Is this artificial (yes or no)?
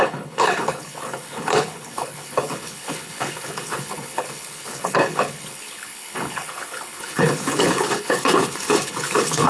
yes